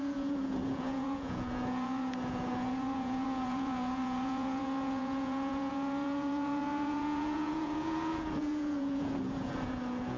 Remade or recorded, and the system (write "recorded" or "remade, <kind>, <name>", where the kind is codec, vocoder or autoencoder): remade, vocoder, Vocos